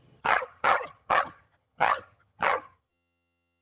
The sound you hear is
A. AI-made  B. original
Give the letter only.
A